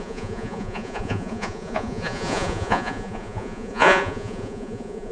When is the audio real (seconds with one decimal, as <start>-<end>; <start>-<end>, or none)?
none